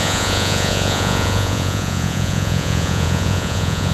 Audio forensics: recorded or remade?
remade